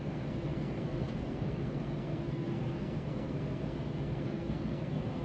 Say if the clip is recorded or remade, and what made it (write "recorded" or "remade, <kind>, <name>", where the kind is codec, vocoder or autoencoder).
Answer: remade, codec, SNAC